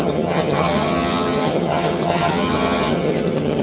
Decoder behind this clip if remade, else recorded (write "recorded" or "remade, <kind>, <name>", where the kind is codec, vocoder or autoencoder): remade, vocoder, HiFi-GAN